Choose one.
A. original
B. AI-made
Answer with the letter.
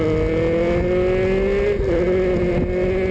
A